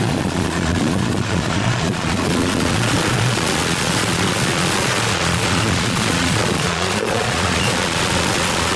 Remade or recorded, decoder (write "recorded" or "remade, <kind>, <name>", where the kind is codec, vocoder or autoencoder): remade, vocoder, Vocos